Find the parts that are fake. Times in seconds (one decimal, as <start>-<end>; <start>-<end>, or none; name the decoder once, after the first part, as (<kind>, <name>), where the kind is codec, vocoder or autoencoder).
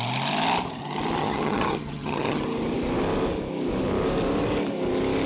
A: 1.2-2.4 (vocoder, HiFi-GAN)